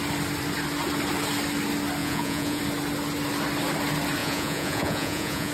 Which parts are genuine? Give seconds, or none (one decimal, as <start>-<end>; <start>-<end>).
0.0-2.0; 2.6-4.2